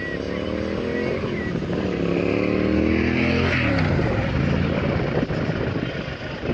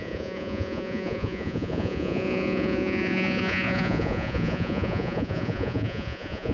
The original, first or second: first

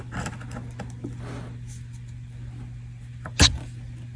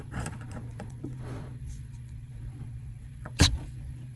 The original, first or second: first